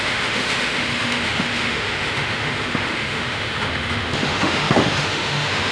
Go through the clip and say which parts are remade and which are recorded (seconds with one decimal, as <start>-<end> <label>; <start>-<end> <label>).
0.0-5.7 remade